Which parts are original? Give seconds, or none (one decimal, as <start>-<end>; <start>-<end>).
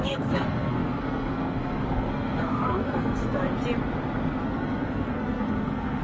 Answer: 3.4-4.4